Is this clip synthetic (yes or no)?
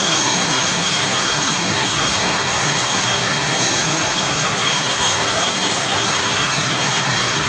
yes